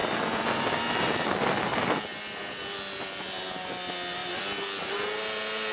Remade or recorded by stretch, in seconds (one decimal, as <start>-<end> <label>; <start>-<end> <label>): 0.0-5.7 recorded